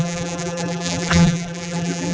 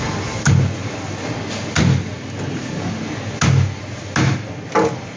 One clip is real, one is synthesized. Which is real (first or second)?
second